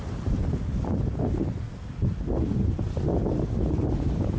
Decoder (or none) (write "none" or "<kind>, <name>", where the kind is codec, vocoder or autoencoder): none